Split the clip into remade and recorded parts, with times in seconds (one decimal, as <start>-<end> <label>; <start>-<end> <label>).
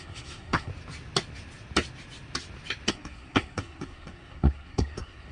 0.0-0.7 remade; 0.7-2.9 recorded; 2.9-5.3 remade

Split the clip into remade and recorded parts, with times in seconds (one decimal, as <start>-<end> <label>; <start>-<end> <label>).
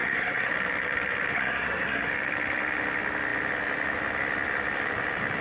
0.0-0.5 remade; 0.5-1.3 recorded; 1.3-2.1 remade; 2.1-5.4 recorded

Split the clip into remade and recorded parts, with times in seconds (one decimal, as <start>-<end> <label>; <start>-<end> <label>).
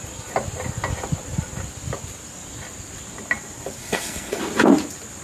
0.0-3.8 recorded; 3.8-4.4 remade; 4.4-5.2 recorded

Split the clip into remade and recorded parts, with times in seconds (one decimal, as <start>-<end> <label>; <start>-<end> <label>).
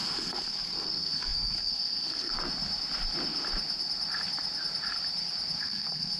0.0-2.3 remade; 2.3-5.6 recorded; 5.6-6.2 remade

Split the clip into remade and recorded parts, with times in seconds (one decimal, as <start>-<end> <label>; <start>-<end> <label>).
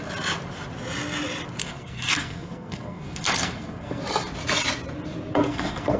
0.0-1.6 recorded; 1.6-4.0 remade; 4.0-5.3 recorded; 5.3-6.0 remade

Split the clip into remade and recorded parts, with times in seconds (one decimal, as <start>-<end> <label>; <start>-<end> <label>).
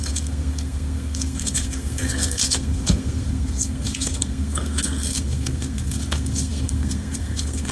0.0-7.7 remade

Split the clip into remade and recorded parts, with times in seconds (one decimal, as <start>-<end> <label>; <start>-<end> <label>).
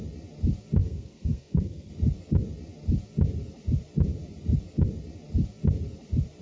0.0-0.8 recorded; 0.8-1.9 remade; 1.9-6.4 recorded